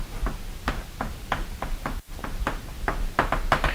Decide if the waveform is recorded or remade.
recorded